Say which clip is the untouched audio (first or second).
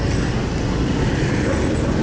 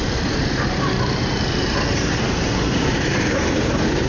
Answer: first